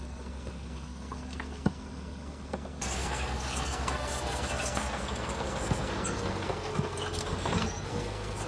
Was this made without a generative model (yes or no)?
no